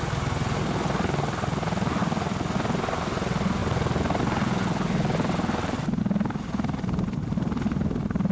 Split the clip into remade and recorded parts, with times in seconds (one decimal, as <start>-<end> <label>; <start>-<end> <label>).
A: 0.0-8.3 recorded